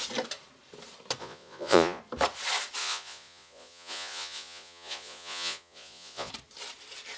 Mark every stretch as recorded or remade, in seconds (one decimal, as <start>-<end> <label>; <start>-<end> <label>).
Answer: 0.0-1.2 recorded; 1.2-2.0 remade; 2.0-2.8 recorded; 2.8-6.3 remade; 6.3-7.2 recorded